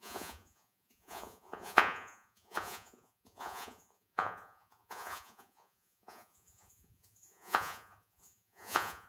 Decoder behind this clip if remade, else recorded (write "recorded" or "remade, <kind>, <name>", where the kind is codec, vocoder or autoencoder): remade, vocoder, Vocos